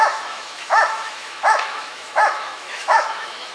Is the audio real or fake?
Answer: fake